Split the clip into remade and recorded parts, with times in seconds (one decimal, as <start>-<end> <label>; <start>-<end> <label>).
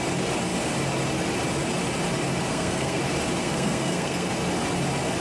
0.0-2.5 recorded; 2.5-3.0 remade; 3.0-3.4 recorded; 3.4-4.3 remade; 4.3-5.2 recorded